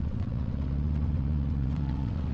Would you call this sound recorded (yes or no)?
no